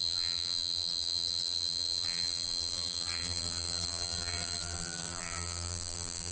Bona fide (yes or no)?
no